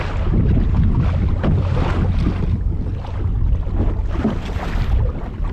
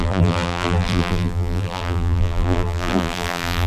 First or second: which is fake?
second